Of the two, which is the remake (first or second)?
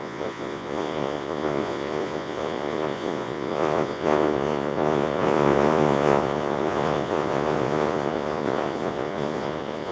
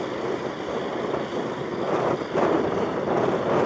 first